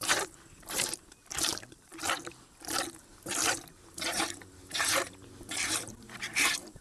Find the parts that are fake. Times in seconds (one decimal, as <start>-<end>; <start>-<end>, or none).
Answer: 0.0-1.9; 3.5-6.8